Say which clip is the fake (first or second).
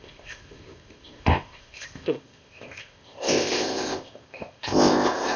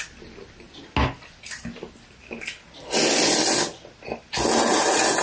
first